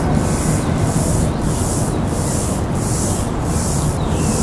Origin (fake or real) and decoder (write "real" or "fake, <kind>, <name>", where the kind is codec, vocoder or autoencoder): fake, vocoder, BigVGAN v2